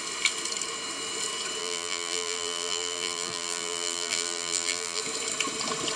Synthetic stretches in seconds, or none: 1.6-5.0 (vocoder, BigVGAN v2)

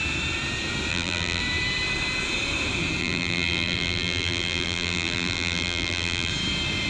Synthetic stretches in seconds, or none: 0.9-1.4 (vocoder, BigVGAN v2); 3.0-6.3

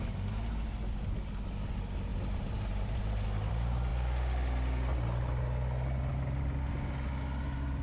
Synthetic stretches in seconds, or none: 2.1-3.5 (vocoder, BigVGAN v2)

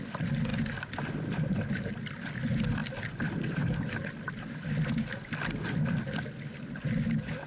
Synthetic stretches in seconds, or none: 0.5-2.3 (vocoder, BigVGAN v2); 2.8-4.9

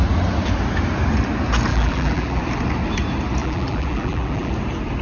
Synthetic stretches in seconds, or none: 1.7-2.4 (vocoder, BigVGAN v2); 3.4-4.5

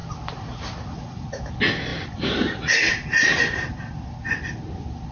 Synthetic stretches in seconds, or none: 0.0-1.5 (vocoder, BigVGAN v2); 1.9-5.1

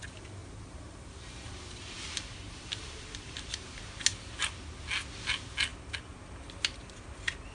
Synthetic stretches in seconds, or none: 0.4-3.8 (vocoder, BigVGAN v2)